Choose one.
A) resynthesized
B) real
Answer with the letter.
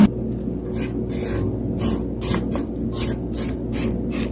B